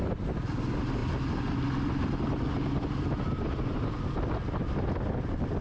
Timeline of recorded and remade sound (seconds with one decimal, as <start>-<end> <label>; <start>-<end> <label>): 0.0-5.6 recorded